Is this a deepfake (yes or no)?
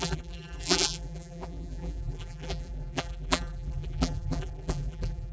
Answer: yes